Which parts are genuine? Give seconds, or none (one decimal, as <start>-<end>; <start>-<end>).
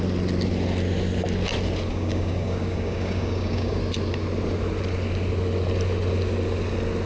0.0-1.9; 3.8-7.1